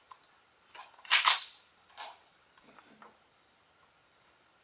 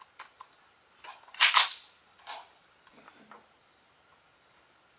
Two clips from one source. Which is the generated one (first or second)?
first